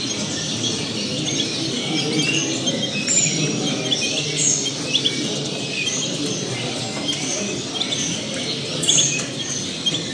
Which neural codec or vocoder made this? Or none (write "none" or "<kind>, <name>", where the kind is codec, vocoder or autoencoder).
none